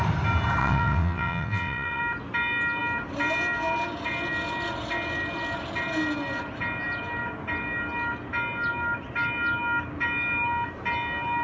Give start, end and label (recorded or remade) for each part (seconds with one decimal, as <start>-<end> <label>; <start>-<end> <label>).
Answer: 0.0-0.6 recorded; 0.6-2.0 remade; 2.0-11.4 recorded